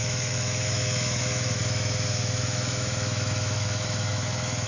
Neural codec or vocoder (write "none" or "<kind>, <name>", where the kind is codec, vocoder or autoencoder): autoencoder, DAC-VAE